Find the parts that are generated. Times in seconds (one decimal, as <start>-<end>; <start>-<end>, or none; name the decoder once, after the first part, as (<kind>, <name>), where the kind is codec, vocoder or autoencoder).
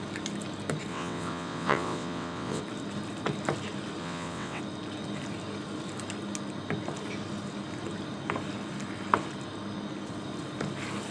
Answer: 0.9-2.6 (vocoder, WaveNeXt); 4.0-4.6